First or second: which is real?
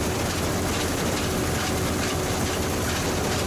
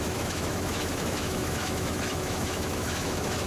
first